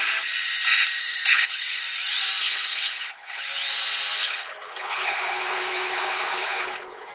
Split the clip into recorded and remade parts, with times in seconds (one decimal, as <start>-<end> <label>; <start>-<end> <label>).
0.0-1.0 recorded; 1.0-1.8 remade; 1.8-2.4 recorded; 2.4-3.4 remade; 3.4-4.2 recorded; 4.2-7.1 remade